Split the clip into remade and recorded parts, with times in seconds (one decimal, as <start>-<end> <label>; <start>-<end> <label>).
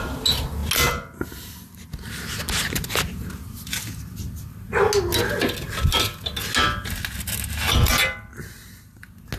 0.0-9.4 recorded